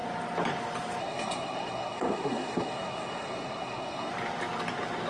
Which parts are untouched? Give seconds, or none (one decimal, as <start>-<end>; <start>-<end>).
0.0-1.0; 4.1-5.1